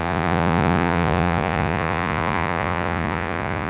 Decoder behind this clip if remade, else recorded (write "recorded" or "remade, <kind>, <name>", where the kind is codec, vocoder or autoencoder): remade, vocoder, Vocos